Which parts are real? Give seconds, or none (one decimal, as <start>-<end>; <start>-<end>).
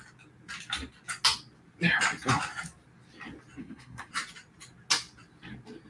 0.0-3.6; 4.1-5.9